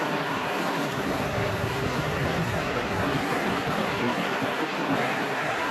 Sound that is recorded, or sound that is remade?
remade